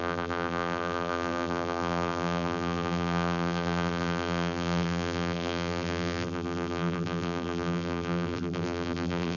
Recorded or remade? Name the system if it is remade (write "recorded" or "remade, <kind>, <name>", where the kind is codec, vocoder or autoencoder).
remade, vocoder, BigVGAN v2